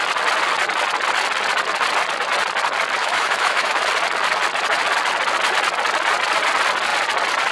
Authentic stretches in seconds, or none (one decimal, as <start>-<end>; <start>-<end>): 0.0-3.0; 3.8-7.5